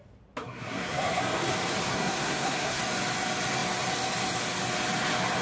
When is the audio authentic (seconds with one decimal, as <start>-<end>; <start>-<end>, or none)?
0.0-0.4; 1.2-1.9; 2.8-5.4